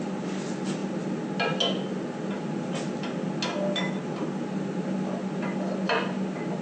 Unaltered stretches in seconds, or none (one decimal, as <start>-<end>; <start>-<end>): 0.0-6.6